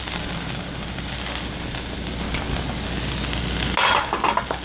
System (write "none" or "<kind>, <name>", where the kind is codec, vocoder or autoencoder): none